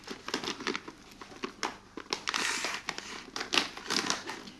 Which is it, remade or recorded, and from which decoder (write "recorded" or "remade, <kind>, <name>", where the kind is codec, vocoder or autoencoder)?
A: recorded